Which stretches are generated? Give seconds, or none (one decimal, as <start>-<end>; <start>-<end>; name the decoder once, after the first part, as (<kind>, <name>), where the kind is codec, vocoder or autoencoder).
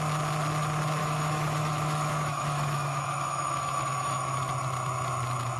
1.0-4.4 (autoencoder, DAC-VAE)